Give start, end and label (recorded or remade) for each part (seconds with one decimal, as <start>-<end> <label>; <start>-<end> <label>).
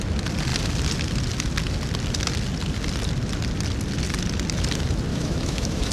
0.0-5.1 recorded; 5.1-5.9 remade